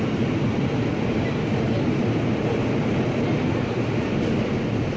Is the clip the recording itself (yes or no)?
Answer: yes